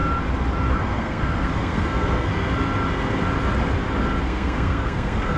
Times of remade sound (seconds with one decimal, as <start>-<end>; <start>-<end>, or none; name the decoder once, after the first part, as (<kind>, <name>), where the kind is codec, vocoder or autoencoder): 0.7-2.3 (codec, SNAC); 4.2-5.4